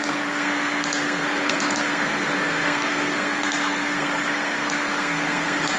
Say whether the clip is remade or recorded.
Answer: remade